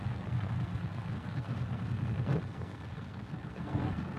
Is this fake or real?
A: fake